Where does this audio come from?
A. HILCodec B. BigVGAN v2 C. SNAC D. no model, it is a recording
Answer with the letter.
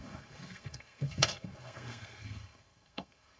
C